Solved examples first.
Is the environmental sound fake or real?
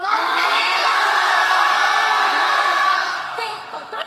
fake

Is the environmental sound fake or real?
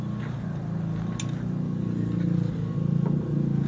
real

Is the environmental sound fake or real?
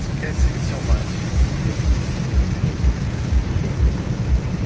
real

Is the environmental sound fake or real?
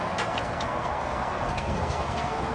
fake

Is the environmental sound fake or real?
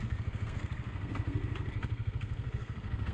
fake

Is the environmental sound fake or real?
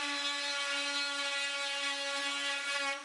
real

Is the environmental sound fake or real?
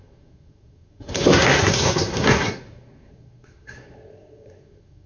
fake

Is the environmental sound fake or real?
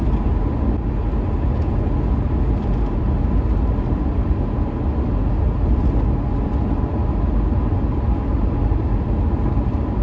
real